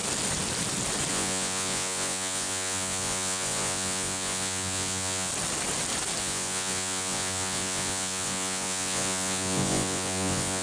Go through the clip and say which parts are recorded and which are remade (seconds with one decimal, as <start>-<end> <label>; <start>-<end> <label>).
0.0-1.1 recorded; 1.1-5.3 remade; 5.3-6.2 recorded; 6.2-10.6 remade